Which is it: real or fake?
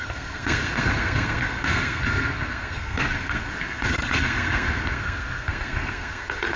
fake